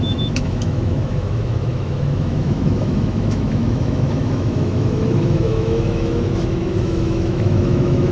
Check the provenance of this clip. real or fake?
fake